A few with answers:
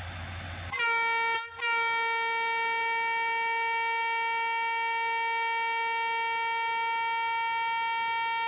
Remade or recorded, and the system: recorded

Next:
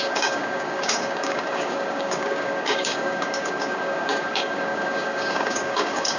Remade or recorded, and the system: remade, codec, DAC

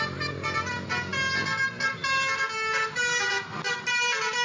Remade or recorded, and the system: recorded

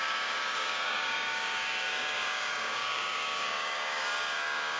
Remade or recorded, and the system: remade, codec, DAC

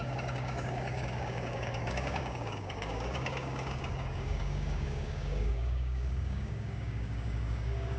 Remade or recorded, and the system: remade, codec, DAC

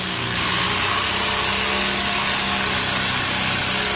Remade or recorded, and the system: recorded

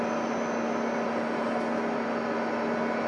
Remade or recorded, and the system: recorded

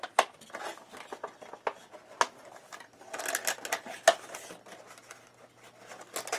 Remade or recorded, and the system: recorded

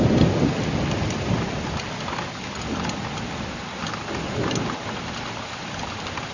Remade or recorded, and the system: recorded